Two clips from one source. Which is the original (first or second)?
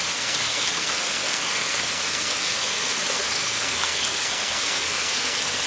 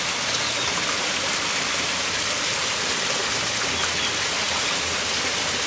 second